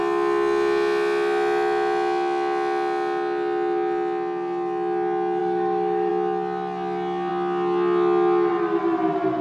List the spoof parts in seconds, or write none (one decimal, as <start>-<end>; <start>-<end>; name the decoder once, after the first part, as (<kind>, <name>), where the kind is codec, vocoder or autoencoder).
5.4-6.1 (autoencoder, DAC-VAE)